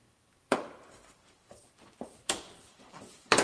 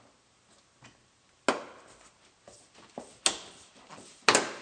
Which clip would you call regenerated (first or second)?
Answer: first